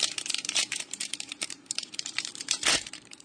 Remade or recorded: remade